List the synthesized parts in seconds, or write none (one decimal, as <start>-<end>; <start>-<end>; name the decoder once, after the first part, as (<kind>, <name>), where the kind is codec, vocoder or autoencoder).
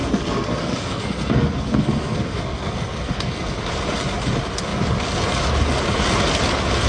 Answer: 0.0-3.6 (codec, SNAC)